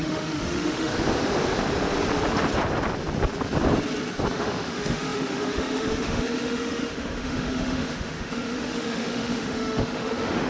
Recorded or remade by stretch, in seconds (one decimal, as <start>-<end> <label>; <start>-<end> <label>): 0.0-0.9 remade; 0.9-4.4 recorded; 4.4-10.5 remade